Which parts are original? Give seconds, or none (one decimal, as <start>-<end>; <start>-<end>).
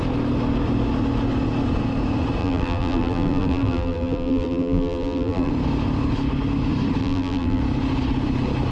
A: 0.0-2.4; 5.5-7.0; 7.6-8.7